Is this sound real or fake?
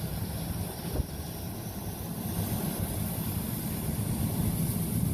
fake